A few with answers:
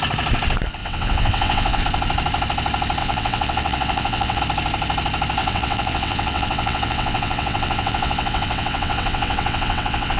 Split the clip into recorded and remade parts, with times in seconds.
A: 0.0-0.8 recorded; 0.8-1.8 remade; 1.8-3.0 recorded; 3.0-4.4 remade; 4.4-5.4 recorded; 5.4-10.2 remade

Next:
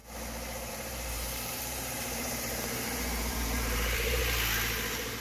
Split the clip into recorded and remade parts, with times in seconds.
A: 0.0-0.7 recorded; 0.7-4.2 remade; 4.2-5.2 recorded

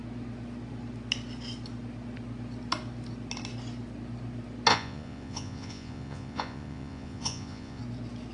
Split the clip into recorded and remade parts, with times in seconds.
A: 0.0-4.7 recorded; 4.7-7.8 remade; 7.8-8.3 recorded